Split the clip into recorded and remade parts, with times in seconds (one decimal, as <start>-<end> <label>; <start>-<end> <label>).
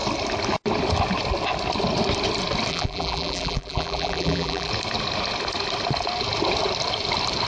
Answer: 0.0-2.7 recorded; 2.7-4.7 remade; 4.7-7.5 recorded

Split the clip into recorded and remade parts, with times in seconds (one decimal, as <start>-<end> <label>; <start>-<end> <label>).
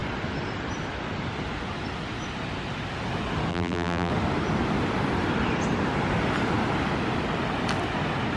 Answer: 0.0-3.5 recorded; 3.5-4.1 remade; 4.1-8.4 recorded